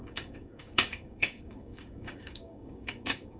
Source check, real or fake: fake